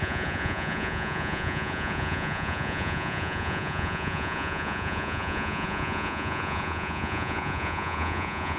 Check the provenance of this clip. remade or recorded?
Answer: remade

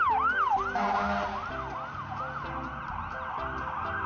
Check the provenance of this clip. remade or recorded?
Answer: recorded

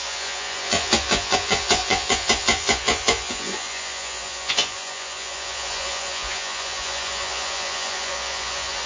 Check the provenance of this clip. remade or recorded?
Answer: remade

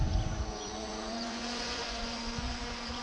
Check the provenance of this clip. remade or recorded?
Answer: remade